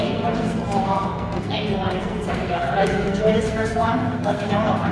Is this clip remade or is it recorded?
remade